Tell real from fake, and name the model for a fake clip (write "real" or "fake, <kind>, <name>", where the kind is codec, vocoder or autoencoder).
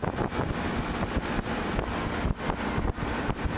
real